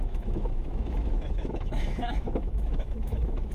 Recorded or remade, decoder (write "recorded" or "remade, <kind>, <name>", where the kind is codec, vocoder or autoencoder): remade, autoencoder, DAC-VAE